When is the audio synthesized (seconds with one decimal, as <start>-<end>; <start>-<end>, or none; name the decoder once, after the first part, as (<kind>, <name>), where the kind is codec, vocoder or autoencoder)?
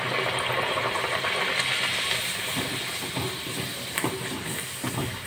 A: 0.8-1.5 (vocoder, BigVGAN v2); 1.9-5.3